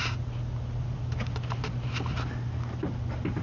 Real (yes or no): yes